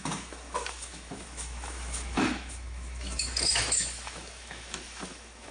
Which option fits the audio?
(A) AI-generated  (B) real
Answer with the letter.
A